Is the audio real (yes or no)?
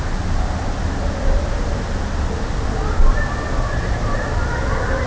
yes